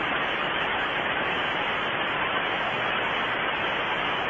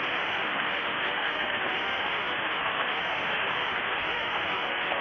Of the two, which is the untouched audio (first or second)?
first